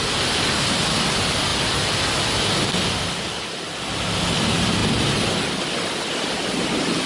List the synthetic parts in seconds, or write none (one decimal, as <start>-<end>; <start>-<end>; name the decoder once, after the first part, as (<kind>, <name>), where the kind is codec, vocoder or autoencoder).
none